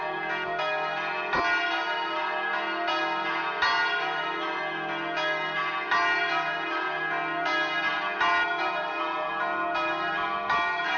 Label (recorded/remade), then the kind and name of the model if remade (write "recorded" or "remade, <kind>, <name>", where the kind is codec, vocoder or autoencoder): recorded